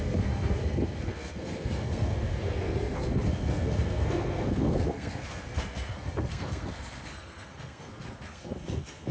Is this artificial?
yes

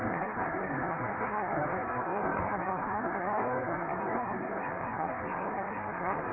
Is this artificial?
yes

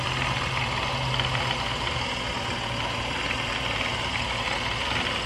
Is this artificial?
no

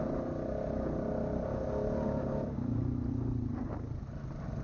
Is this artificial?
no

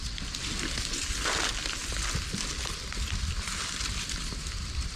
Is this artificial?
no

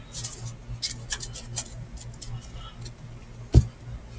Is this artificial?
no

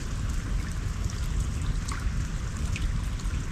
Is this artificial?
no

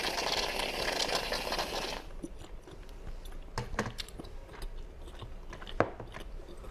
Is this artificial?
no